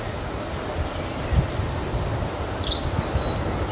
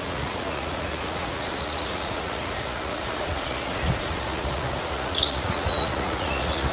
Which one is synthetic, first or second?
second